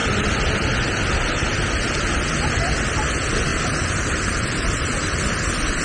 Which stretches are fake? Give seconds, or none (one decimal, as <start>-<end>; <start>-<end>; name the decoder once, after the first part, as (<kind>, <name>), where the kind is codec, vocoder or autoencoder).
3.5-5.8 (vocoder, BigVGAN v2)